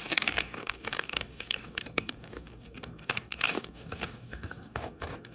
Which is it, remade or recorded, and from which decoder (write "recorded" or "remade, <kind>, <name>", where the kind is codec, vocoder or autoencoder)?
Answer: remade, codec, DAC